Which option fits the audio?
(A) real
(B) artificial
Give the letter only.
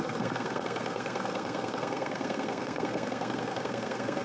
B